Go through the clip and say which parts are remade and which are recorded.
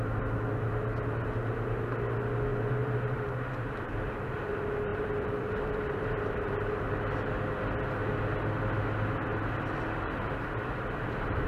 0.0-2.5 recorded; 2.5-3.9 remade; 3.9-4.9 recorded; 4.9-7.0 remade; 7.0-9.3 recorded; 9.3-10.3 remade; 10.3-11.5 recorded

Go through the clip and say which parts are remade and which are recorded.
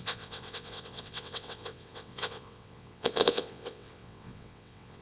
0.0-5.0 remade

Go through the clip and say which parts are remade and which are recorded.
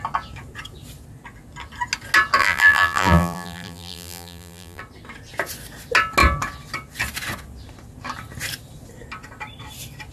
0.0-2.4 recorded; 2.4-4.8 remade; 4.8-10.1 recorded